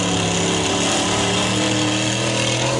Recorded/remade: recorded